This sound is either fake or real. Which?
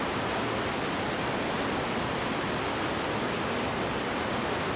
real